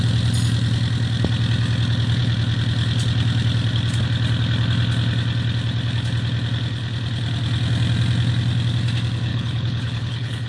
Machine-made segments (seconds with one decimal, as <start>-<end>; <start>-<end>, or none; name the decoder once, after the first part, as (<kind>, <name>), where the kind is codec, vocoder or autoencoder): 9.3-10.5 (codec, HILCodec)